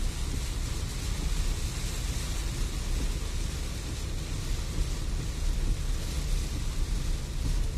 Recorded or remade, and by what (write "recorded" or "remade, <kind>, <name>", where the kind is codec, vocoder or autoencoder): recorded